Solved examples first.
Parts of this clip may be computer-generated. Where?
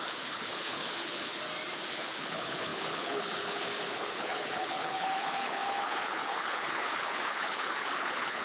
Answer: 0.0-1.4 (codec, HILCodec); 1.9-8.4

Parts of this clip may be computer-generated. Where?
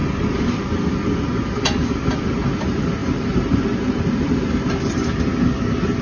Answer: 0.0-0.7 (vocoder, BigVGAN v2); 3.0-4.7